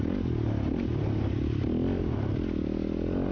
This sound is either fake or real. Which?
real